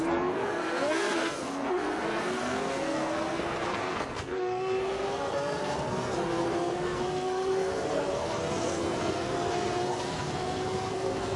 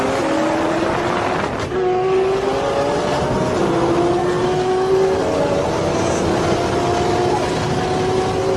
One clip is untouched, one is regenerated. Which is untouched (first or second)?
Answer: second